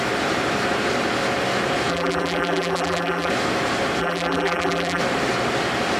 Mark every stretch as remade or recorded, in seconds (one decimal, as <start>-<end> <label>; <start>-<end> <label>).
0.0-1.9 recorded; 1.9-3.3 remade; 3.3-4.0 recorded; 4.0-5.0 remade; 5.0-6.0 recorded

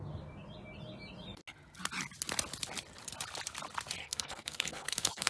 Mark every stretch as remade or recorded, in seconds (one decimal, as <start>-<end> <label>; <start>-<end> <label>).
0.0-4.0 recorded; 4.0-5.3 remade

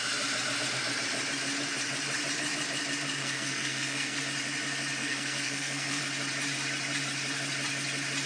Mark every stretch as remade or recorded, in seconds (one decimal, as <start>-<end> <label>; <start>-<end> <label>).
0.0-3.2 recorded; 3.2-4.2 remade; 4.2-5.0 recorded; 5.0-6.0 remade; 6.0-8.3 recorded

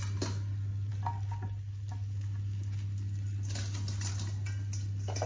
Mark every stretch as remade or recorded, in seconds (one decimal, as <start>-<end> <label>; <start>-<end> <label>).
0.0-5.3 recorded

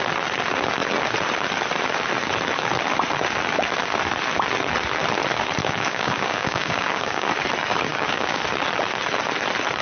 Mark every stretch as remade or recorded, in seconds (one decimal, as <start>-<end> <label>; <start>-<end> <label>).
0.0-5.6 recorded; 5.6-7.3 remade; 7.3-7.9 recorded; 7.9-8.4 remade; 8.4-9.8 recorded